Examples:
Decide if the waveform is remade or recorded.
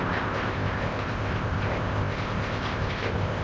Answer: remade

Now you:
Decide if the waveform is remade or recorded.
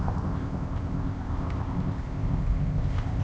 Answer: remade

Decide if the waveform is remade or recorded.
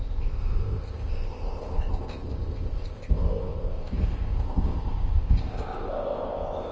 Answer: remade